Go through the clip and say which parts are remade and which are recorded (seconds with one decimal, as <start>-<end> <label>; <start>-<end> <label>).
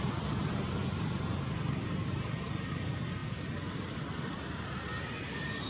0.0-5.7 recorded